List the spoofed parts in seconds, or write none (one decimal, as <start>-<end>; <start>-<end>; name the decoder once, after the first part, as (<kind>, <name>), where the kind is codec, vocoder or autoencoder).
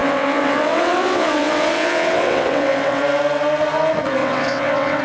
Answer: 0.0-3.0 (vocoder, WaveNeXt); 4.2-5.0